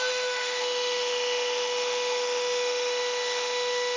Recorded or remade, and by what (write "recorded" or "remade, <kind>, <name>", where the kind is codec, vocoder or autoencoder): remade, autoencoder, DAC-VAE